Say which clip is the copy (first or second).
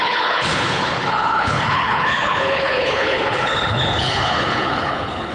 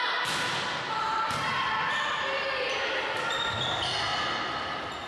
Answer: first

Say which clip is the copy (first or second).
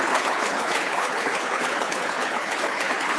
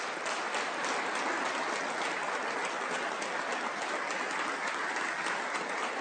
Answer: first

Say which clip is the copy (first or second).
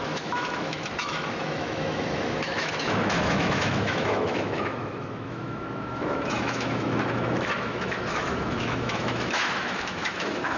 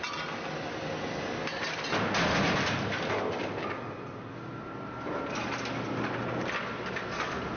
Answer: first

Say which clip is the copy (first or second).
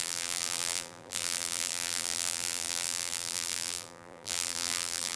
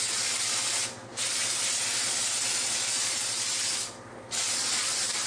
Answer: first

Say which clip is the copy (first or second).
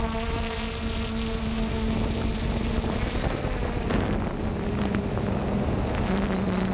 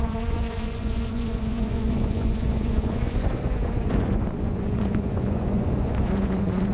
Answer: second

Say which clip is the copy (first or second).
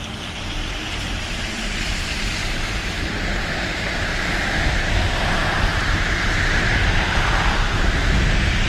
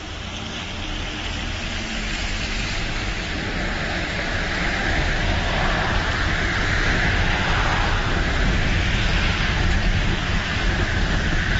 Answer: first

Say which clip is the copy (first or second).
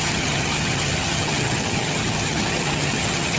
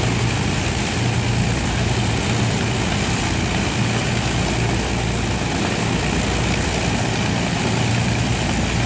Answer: first